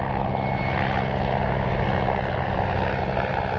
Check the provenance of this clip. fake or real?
real